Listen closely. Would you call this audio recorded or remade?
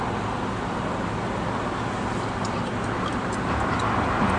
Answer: recorded